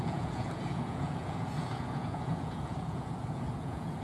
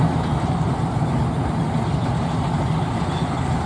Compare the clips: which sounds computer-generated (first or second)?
first